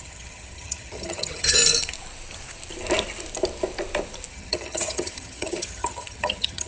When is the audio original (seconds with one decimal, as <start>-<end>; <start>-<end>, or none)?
1.6-4.3